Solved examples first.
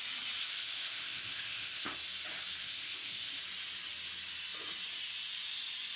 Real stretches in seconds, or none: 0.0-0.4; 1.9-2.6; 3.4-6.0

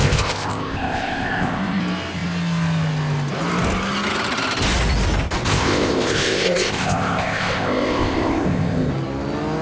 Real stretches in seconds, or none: 1.8-5.5; 8.9-9.6